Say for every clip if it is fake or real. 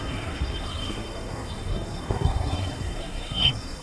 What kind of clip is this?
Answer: fake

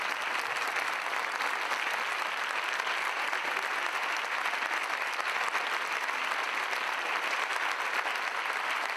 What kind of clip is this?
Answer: real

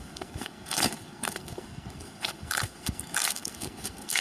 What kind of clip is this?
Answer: fake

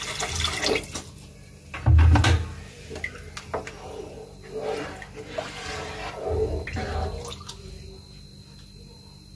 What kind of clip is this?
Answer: real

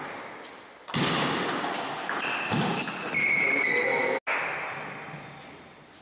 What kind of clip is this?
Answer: real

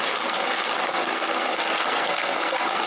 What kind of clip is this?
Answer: fake